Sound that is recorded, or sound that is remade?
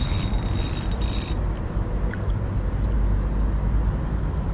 recorded